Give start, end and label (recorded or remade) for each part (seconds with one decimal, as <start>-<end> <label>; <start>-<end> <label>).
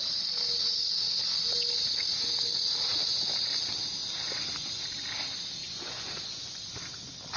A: 0.0-5.6 recorded; 5.6-6.7 remade; 6.7-7.4 recorded